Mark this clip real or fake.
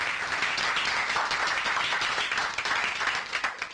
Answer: real